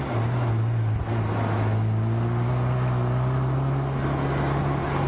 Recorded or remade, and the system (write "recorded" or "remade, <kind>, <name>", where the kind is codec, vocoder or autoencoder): recorded